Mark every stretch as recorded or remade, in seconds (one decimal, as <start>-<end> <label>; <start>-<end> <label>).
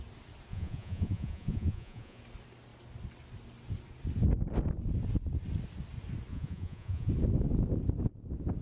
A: 0.0-0.5 recorded; 0.5-2.2 remade; 2.2-6.3 recorded; 6.3-7.1 remade; 7.1-8.6 recorded